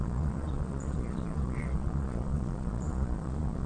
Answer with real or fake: fake